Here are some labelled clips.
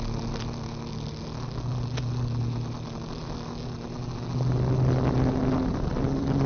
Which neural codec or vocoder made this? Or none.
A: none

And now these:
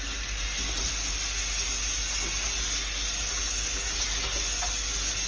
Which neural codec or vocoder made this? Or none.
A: none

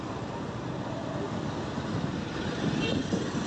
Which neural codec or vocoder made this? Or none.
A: none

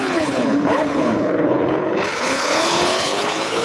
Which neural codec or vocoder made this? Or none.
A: codec, HILCodec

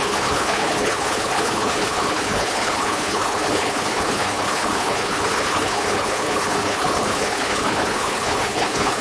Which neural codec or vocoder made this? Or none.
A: codec, HILCodec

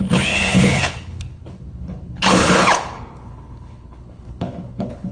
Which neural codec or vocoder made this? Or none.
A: codec, HILCodec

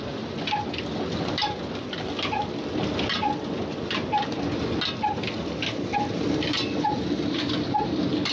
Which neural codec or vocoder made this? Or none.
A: none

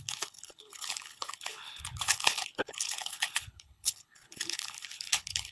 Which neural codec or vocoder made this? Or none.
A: codec, HILCodec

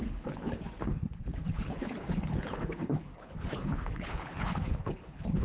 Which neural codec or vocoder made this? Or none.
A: codec, HILCodec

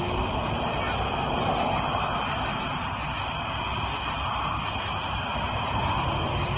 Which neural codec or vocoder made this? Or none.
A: none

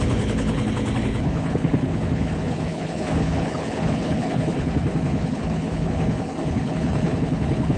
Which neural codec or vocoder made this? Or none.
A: codec, HILCodec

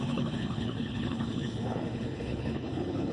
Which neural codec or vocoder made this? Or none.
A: codec, HILCodec